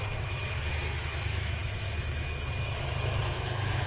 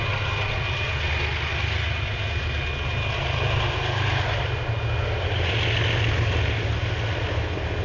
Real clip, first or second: second